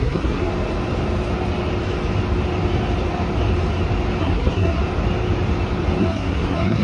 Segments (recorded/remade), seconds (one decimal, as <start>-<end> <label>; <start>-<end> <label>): 0.0-0.5 remade; 0.5-4.2 recorded; 4.2-4.8 remade; 4.8-6.0 recorded; 6.0-6.8 remade